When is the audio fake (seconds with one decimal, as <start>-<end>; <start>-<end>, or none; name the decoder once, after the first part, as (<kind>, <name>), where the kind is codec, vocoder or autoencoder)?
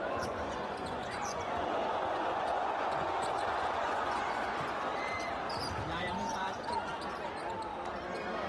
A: 0.0-4.9 (vocoder, Vocos); 6.0-6.9